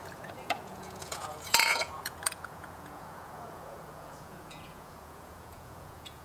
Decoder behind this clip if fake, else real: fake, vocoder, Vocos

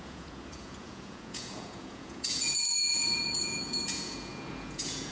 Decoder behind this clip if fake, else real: fake, vocoder, Vocos